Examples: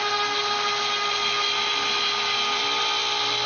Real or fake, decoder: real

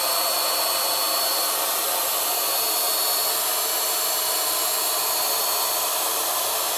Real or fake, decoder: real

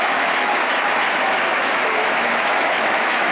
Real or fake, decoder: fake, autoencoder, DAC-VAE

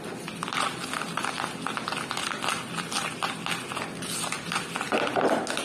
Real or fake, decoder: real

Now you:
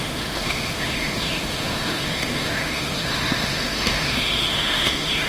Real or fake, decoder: fake, autoencoder, DAC-VAE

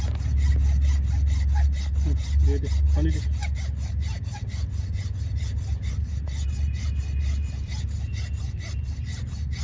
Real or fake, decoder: real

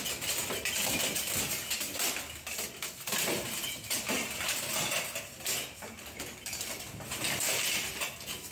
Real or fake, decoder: real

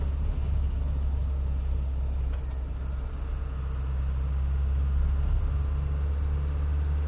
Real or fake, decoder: real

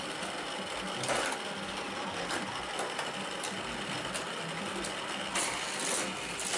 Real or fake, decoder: real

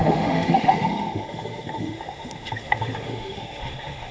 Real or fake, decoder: fake, autoencoder, DAC-VAE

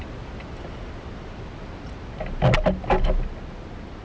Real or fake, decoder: real